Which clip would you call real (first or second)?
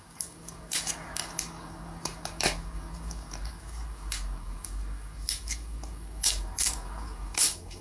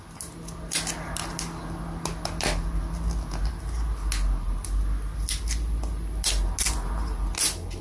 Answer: second